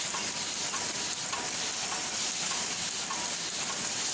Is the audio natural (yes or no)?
yes